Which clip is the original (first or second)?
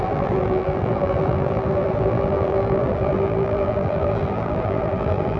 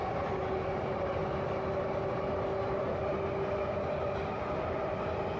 second